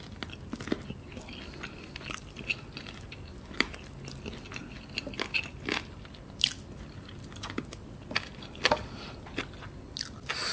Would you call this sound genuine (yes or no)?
yes